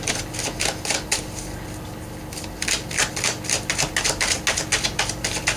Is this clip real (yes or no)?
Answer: yes